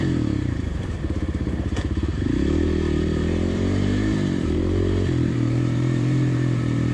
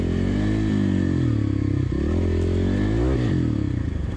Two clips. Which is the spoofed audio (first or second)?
first